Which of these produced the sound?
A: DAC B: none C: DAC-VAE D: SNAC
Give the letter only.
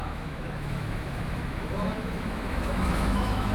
C